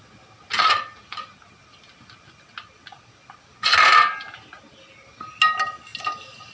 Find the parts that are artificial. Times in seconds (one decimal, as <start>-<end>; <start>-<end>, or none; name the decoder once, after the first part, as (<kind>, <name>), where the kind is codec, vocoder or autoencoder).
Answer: none